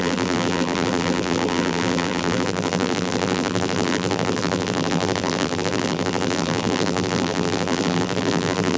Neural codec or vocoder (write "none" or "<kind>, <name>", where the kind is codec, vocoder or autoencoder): vocoder, BigVGAN v2